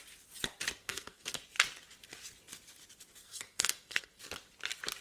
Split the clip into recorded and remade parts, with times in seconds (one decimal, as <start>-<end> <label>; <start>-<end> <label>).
0.0-0.8 recorded; 0.8-1.4 remade; 1.4-3.2 recorded; 3.2-4.2 remade; 4.2-5.0 recorded